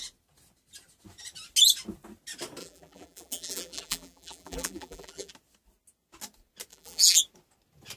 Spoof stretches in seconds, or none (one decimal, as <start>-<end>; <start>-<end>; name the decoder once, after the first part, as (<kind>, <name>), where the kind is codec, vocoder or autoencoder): 2.6-5.3 (vocoder, BigVGAN v2); 6.7-7.2